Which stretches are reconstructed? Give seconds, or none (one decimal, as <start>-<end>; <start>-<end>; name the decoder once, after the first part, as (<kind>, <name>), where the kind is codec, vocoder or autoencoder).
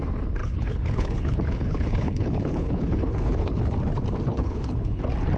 0.4-3.6 (codec, HILCodec); 4.3-5.0